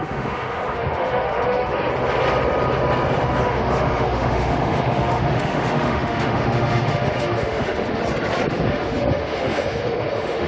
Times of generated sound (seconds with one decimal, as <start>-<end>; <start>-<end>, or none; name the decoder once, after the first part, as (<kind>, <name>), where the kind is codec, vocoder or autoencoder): 0.0-1.9 (autoencoder, DAC-VAE); 3.4-8.0; 8.5-10.5